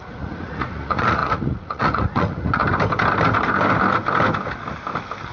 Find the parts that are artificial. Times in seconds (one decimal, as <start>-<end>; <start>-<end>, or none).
0.0-2.6